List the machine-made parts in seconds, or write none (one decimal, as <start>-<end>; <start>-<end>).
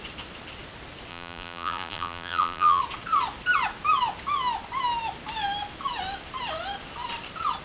1.1-2.8